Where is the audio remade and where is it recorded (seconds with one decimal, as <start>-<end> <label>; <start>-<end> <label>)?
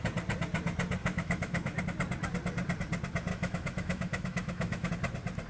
0.0-1.0 recorded; 1.0-1.8 remade; 1.8-3.3 recorded; 3.3-4.9 remade; 4.9-5.5 recorded